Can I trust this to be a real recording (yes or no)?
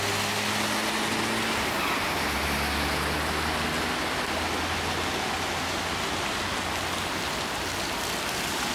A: yes